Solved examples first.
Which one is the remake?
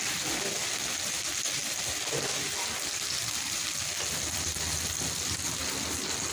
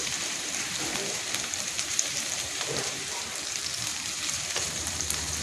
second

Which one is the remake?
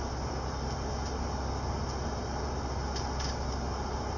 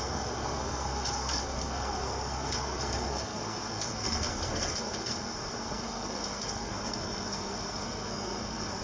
second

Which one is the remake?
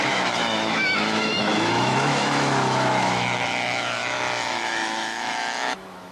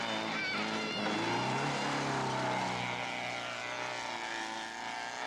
first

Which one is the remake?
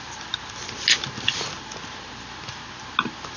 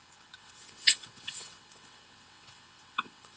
second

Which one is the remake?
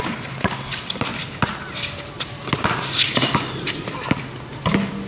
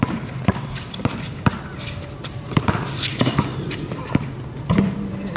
second